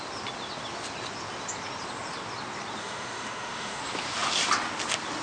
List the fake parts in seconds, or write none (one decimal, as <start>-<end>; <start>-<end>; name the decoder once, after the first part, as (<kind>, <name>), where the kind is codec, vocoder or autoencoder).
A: 2.8-3.8 (autoencoder, DAC-VAE)